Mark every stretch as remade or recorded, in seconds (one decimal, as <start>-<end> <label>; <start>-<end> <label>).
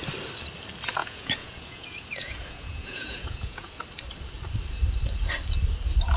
0.0-1.0 recorded; 1.0-3.7 remade; 3.7-6.2 recorded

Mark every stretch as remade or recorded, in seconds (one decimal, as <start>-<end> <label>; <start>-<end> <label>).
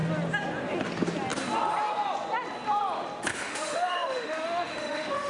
0.0-3.3 recorded; 3.3-5.3 remade